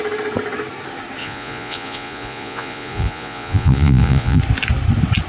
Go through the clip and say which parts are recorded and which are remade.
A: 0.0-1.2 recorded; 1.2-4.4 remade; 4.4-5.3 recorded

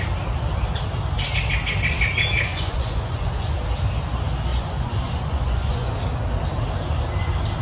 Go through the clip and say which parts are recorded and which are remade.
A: 0.0-2.5 recorded; 2.5-3.6 remade; 3.6-4.5 recorded; 4.5-5.9 remade; 5.9-7.6 recorded